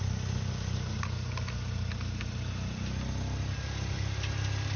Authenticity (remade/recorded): recorded